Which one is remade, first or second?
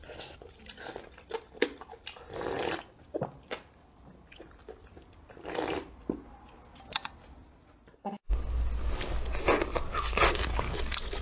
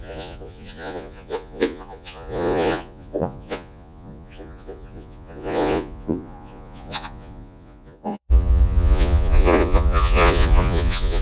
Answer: second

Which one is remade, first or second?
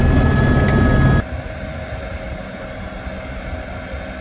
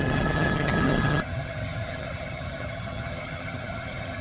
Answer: second